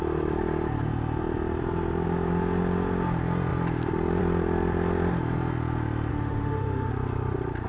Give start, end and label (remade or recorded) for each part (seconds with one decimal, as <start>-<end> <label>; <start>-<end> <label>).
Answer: 0.0-6.1 recorded; 6.1-6.9 remade; 6.9-7.7 recorded